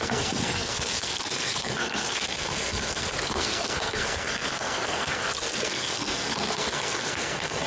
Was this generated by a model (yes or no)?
yes